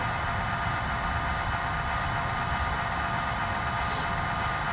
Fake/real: real